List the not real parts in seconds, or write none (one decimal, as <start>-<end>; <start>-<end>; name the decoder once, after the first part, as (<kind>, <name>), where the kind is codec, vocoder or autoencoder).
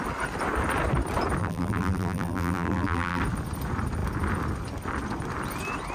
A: 1.4-3.2 (vocoder, BigVGAN v2)